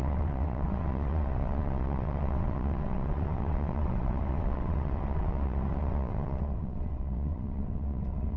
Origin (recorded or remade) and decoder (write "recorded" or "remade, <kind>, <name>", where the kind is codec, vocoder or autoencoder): remade, vocoder, WaveNeXt